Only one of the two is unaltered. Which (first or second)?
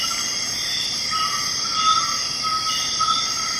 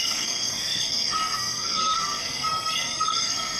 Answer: first